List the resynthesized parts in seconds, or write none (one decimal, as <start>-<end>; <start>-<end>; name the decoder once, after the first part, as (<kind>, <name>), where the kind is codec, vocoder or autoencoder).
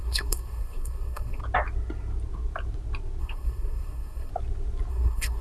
0.0-1.4 (codec, SNAC); 3.2-4.3; 4.9-5.4